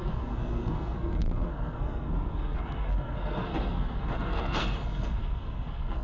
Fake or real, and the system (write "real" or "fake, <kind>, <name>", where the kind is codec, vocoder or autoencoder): fake, codec, SNAC